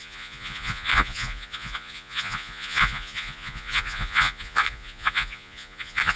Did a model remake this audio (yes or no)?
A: yes